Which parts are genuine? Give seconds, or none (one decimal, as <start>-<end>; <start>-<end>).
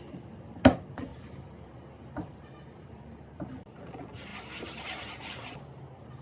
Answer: 0.0-1.1; 3.8-4.3; 5.6-6.2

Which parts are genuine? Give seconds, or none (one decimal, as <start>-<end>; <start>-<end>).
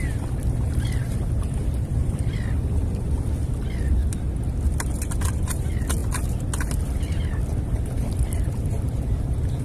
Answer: 4.0-4.6; 6.0-7.1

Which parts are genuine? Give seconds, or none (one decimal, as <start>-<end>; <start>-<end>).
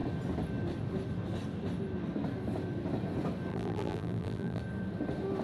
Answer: 0.0-3.5; 4.6-5.4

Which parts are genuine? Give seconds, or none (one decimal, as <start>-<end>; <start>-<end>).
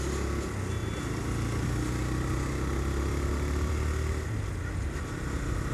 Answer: 0.0-5.7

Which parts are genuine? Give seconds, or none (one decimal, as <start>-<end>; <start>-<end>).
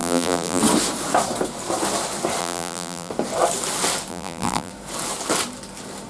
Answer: 0.6-2.4; 3.1-4.1; 4.7-6.1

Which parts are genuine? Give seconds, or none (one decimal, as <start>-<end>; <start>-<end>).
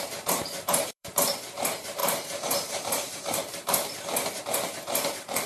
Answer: none